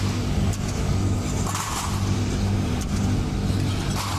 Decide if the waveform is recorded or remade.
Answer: recorded